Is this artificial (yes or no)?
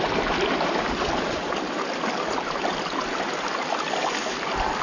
no